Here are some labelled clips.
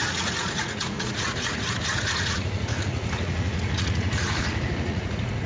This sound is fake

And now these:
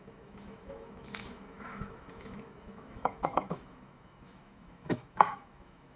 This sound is fake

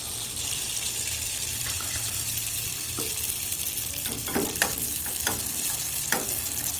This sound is fake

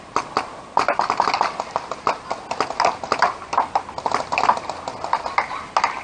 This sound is real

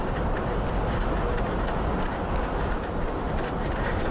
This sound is real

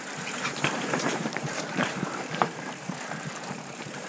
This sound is fake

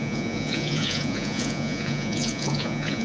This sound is fake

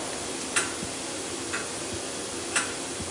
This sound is real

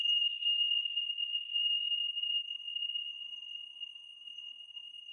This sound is fake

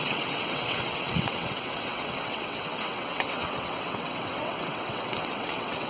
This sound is fake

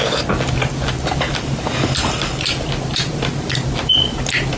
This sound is real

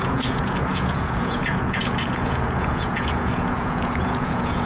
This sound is fake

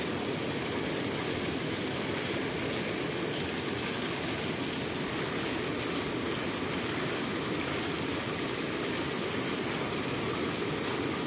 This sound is real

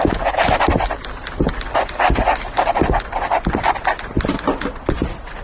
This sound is real